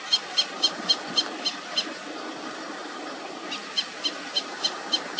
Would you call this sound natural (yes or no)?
yes